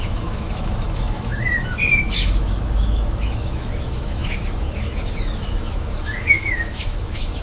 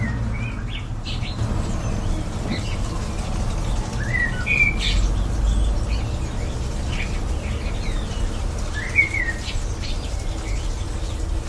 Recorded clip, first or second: second